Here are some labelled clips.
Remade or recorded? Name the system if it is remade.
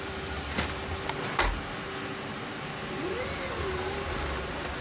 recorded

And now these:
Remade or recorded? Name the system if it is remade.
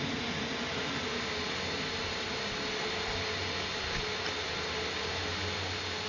recorded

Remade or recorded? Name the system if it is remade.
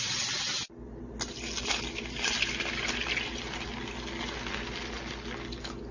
recorded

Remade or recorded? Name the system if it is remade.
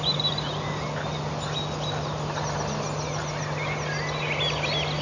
recorded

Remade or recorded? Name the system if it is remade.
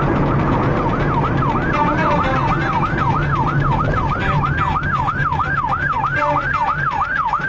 recorded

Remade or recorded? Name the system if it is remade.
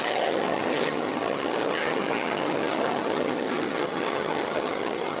remade, vocoder, HiFi-GAN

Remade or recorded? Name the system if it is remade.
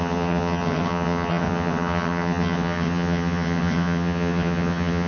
remade, vocoder, HiFi-GAN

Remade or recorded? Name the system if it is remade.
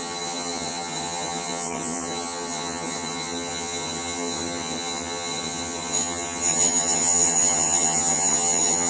remade, vocoder, HiFi-GAN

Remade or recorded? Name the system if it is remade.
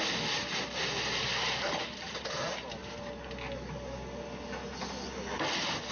recorded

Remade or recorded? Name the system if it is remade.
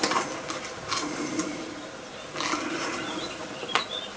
recorded